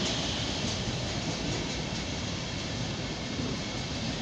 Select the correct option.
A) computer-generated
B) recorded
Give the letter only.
B